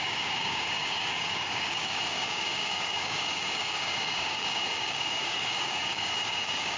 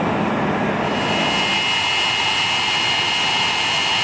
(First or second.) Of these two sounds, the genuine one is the second